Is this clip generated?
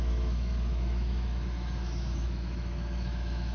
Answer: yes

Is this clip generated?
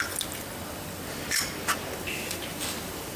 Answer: no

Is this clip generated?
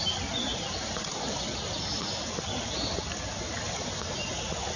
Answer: no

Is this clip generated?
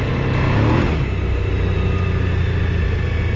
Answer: no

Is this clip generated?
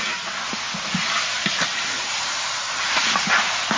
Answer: no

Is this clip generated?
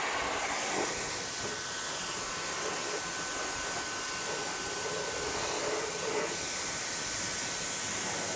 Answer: no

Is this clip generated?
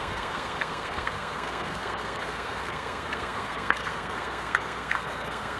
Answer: yes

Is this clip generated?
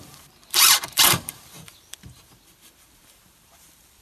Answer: yes